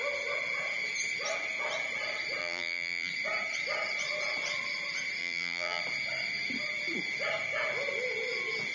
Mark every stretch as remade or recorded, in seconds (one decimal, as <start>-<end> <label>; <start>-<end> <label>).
0.0-2.4 recorded; 2.4-3.1 remade; 3.1-5.2 recorded; 5.2-5.8 remade; 5.8-8.7 recorded